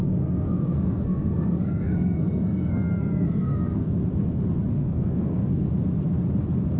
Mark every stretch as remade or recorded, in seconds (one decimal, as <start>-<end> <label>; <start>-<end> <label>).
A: 0.0-3.9 remade; 3.9-4.8 recorded; 4.8-5.7 remade; 5.7-6.8 recorded